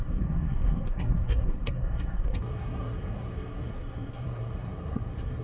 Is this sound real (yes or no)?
no